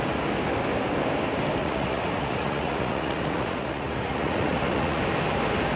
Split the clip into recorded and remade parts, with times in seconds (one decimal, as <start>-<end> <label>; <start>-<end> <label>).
0.0-1.6 recorded; 1.6-5.0 remade; 5.0-5.8 recorded